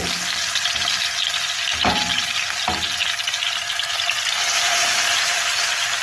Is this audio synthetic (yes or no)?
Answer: no